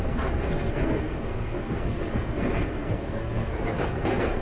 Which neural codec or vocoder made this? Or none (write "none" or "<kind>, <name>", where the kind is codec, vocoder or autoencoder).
codec, SNAC